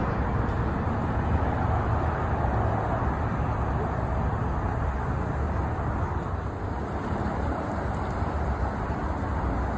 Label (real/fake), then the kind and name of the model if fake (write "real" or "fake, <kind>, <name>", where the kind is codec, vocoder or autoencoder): real